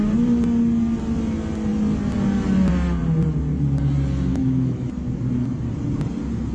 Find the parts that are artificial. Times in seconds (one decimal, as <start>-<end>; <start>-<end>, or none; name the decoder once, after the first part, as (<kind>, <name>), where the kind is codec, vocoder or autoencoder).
4.3-4.9 (autoencoder, DAC-VAE)